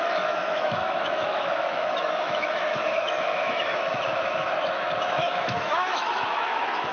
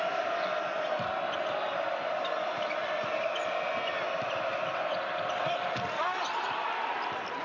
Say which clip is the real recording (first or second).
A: second